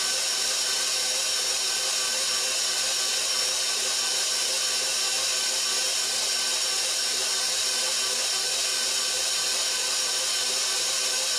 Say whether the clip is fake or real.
real